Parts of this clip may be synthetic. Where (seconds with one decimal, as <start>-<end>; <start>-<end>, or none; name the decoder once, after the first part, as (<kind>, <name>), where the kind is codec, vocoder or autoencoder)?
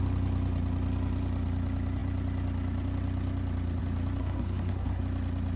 4.2-5.0 (codec, SNAC)